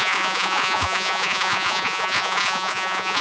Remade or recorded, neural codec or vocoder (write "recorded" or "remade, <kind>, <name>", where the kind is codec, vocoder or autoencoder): remade, vocoder, Vocos